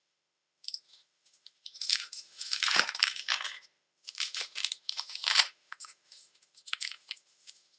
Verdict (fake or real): fake